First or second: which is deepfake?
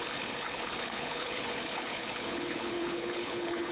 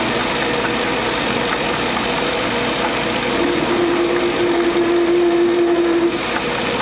first